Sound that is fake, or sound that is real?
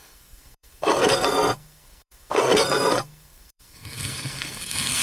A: fake